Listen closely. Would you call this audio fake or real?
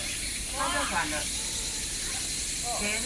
real